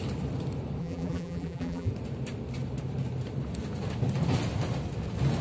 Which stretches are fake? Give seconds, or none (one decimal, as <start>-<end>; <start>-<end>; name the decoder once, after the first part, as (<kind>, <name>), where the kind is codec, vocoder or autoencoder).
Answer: 0.8-1.9 (vocoder, BigVGAN v2)